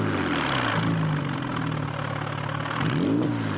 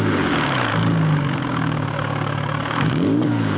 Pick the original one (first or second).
first